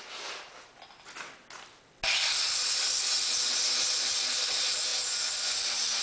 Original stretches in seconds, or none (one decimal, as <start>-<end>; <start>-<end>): 0.0-4.9; 5.6-6.0